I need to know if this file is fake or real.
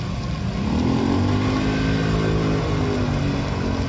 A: real